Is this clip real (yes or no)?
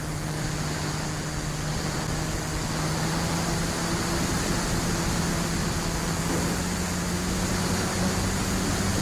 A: yes